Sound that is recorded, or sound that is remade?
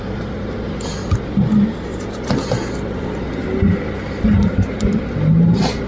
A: recorded